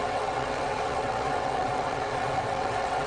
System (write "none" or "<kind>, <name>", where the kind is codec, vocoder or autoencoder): vocoder, WaveNeXt